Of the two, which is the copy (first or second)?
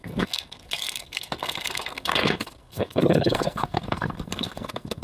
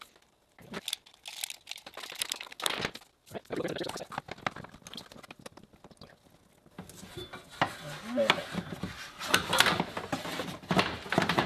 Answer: first